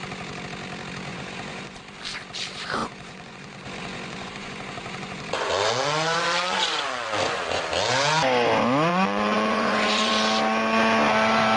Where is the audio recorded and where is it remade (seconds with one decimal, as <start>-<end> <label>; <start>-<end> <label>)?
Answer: 0.0-1.1 recorded; 1.1-1.8 remade; 1.8-2.8 recorded; 2.8-7.6 remade; 7.6-8.9 recorded; 8.9-10.1 remade; 10.1-11.6 recorded

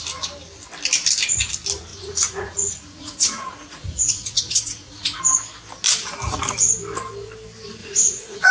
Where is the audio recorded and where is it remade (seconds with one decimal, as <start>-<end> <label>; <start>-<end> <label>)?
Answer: 0.0-1.9 recorded; 1.9-5.2 remade; 5.2-7.8 recorded; 7.8-8.5 remade